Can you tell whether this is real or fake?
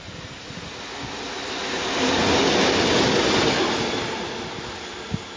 real